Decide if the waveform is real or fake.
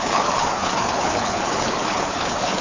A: fake